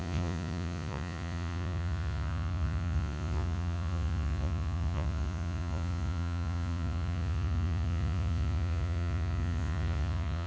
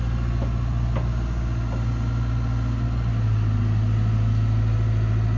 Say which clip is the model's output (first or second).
first